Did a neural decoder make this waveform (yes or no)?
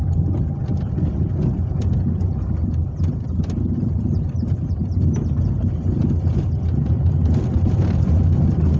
no